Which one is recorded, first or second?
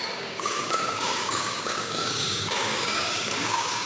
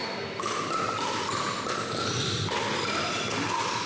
second